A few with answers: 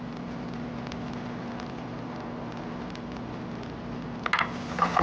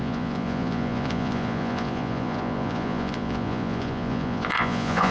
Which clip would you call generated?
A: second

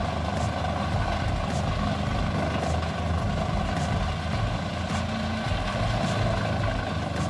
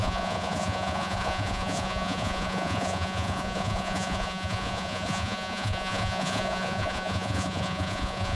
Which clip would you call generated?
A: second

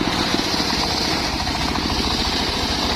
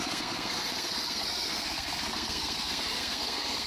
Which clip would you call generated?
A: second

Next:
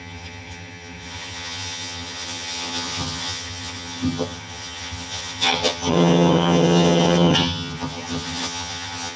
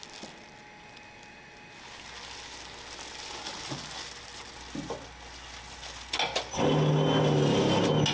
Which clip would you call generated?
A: first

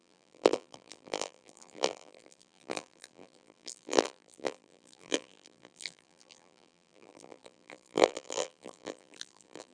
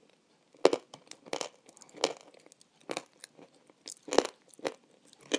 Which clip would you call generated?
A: first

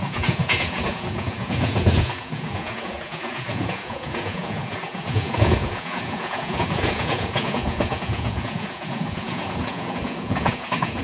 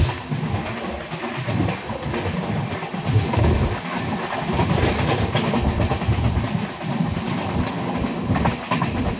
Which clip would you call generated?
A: first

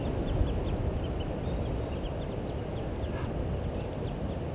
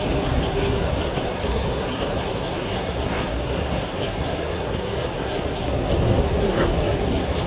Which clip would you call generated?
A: second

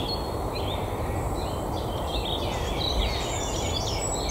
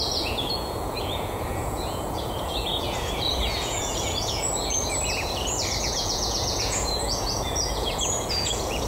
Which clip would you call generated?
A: second